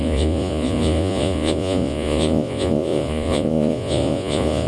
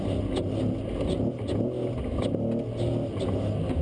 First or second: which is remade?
first